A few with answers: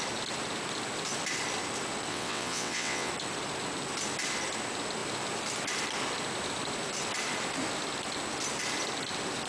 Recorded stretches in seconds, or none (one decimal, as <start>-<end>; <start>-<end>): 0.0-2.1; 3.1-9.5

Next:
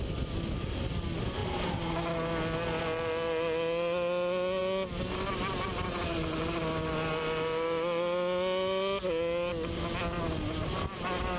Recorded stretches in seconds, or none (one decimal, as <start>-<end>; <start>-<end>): 0.0-11.4

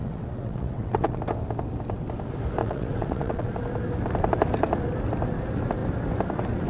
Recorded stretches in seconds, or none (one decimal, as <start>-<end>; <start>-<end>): 1.2-2.6; 3.5-6.7